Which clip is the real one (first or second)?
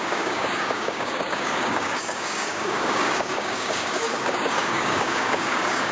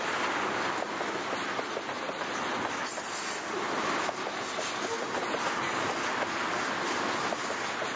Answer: second